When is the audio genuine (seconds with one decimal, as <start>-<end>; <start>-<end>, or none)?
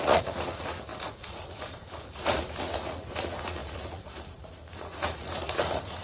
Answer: none